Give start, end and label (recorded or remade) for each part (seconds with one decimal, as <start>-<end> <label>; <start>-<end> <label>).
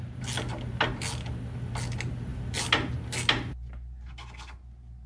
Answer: 0.0-5.1 recorded